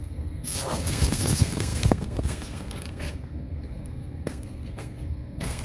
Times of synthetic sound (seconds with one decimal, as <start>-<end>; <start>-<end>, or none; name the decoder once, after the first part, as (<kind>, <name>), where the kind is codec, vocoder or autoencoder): 0.0-5.6 (codec, SNAC)